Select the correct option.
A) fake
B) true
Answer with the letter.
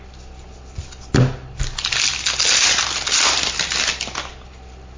B